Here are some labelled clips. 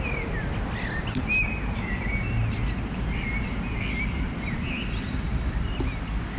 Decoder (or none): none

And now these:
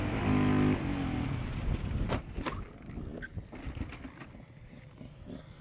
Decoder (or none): none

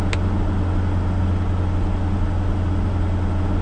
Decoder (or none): none